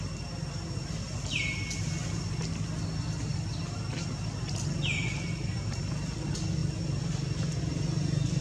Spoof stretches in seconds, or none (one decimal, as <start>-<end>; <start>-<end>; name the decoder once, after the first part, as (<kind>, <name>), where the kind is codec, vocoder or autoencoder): none